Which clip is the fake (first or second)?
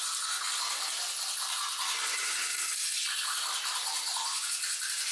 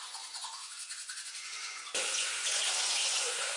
second